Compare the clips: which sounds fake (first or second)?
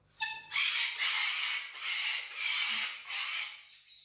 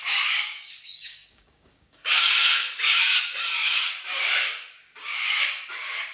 second